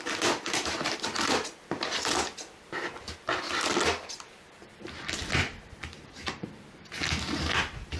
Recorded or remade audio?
recorded